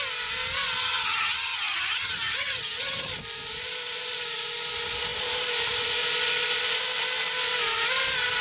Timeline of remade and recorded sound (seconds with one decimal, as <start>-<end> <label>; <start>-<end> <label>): 0.0-0.8 recorded; 0.8-3.1 remade; 3.1-8.4 recorded